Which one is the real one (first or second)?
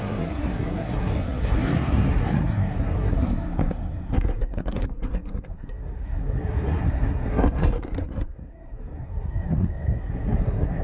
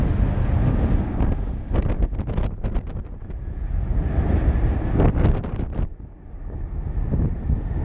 second